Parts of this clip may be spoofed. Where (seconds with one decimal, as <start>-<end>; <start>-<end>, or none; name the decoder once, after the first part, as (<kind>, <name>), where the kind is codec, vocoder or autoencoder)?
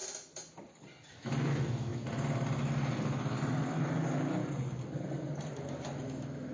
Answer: 1.1-1.9 (autoencoder, DAC-VAE); 5.5-6.5